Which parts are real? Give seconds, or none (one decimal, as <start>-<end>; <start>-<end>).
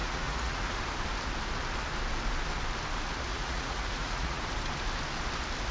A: 0.8-3.3; 4.4-5.7